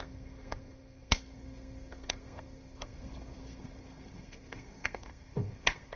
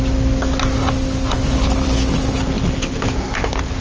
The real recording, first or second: second